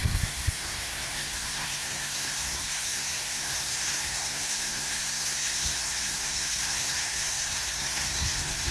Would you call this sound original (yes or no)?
no